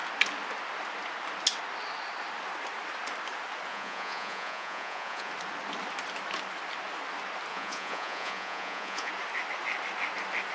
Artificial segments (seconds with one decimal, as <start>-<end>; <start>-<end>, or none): 3.7-5.3; 7.5-9.1